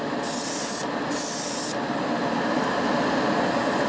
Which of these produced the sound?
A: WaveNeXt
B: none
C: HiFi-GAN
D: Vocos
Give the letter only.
B